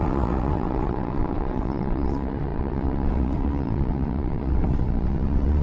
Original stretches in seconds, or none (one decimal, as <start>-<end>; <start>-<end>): none